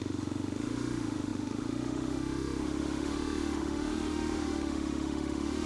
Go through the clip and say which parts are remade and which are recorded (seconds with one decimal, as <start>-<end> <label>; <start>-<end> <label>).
0.0-5.7 remade